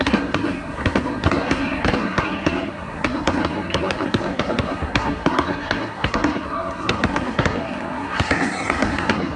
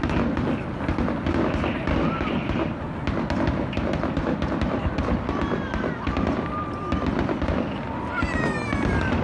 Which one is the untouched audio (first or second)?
second